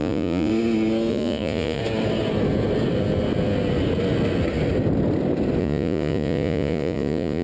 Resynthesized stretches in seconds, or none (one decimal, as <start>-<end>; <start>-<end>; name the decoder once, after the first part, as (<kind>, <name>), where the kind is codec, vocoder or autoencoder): 0.0-0.5 (vocoder, Vocos); 1.1-1.8; 5.6-7.4